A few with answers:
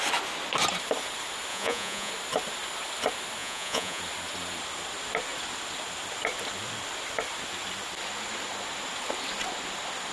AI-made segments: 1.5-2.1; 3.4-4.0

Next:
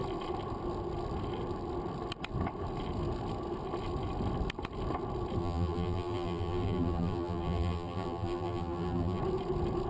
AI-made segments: 5.4-9.2

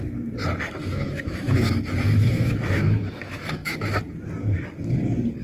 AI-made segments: 0.8-4.0

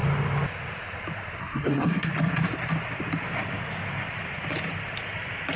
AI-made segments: 1.4-2.1

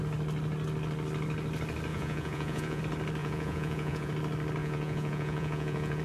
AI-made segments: 1.9-2.8; 3.2-4.1; 4.6-6.0

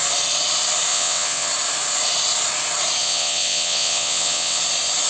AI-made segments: 0.9-1.5; 3.0-4.6

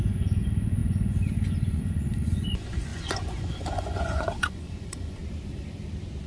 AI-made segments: 0.0-5.2

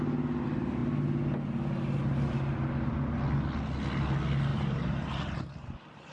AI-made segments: 4.5-6.1